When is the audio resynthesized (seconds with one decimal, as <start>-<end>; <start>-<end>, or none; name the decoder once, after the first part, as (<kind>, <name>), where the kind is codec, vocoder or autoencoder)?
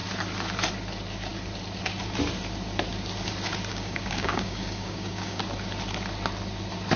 3.7-5.4 (codec, DAC)